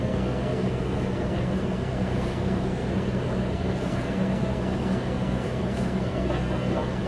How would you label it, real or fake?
fake